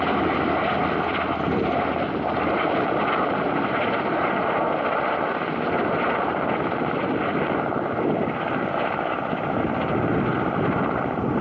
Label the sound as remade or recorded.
recorded